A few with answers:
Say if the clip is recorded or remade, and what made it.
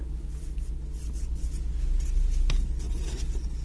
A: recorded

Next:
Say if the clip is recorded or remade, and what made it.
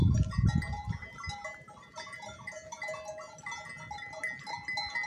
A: recorded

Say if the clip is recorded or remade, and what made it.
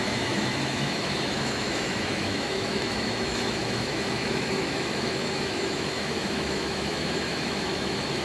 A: remade, autoencoder, DAC-VAE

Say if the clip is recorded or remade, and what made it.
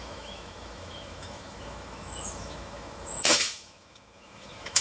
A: remade, autoencoder, DAC-VAE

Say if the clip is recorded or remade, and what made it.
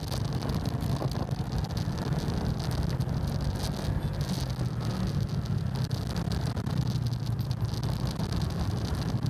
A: recorded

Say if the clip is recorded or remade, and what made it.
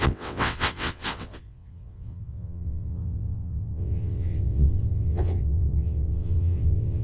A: remade, vocoder, WaveNeXt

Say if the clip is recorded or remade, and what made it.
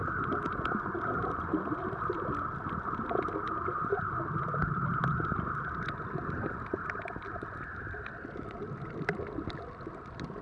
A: recorded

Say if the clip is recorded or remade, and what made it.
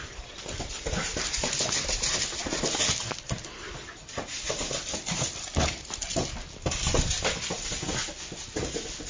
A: recorded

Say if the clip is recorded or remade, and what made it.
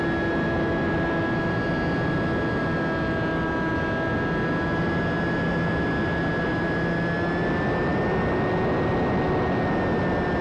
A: recorded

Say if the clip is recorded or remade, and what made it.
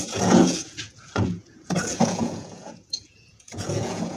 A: remade, vocoder, Vocos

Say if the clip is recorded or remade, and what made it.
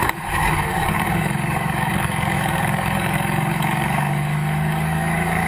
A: remade, codec, DAC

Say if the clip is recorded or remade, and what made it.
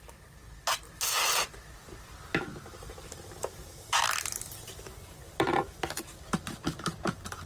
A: recorded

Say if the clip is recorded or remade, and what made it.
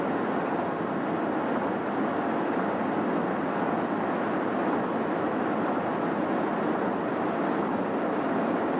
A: recorded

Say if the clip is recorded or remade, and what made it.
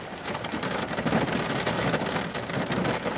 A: recorded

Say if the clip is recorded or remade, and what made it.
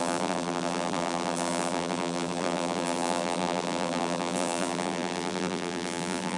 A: remade, vocoder, BigVGAN v2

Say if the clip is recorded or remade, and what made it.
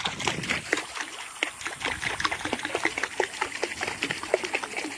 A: recorded